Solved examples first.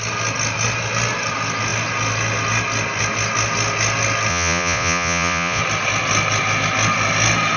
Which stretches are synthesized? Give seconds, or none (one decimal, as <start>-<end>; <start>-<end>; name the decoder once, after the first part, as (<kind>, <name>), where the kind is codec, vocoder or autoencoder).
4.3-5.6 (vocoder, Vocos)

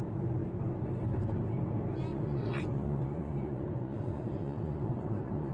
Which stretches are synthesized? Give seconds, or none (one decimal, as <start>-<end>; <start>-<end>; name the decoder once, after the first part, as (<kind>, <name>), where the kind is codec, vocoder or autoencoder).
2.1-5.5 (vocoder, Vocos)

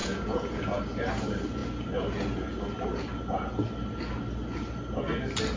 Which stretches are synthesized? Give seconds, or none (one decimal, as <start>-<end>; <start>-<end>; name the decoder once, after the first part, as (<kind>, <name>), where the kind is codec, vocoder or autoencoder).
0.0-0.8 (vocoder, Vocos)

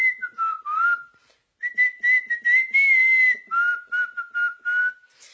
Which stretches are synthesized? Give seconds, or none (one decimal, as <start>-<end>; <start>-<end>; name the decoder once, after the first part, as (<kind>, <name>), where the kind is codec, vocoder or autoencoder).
none